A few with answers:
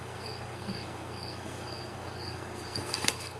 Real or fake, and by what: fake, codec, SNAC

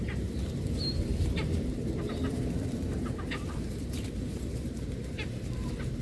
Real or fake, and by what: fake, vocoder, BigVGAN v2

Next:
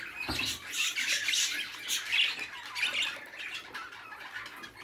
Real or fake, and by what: real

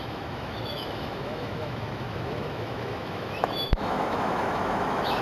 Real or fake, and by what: fake, autoencoder, DAC-VAE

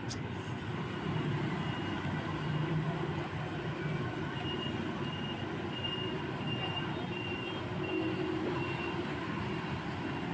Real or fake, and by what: real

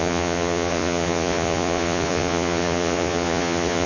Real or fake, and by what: fake, vocoder, Vocos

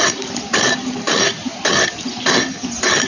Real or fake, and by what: fake, vocoder, BigVGAN v2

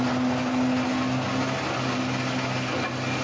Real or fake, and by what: real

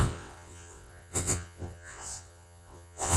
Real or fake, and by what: fake, vocoder, WaveNeXt